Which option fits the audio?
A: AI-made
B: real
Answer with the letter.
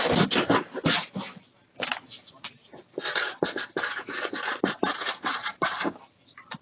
B